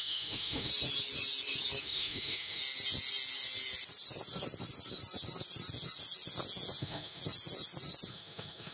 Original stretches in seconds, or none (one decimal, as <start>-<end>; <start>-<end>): 0.7-1.8; 2.6-6.8; 7.2-8.1